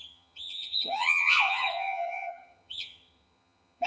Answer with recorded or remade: remade